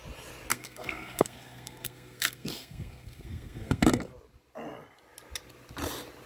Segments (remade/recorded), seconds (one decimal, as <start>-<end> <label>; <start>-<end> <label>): 0.0-0.5 recorded; 0.5-4.1 remade; 4.1-6.3 recorded